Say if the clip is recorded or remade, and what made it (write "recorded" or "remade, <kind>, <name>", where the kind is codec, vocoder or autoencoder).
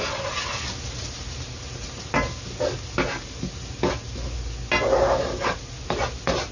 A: recorded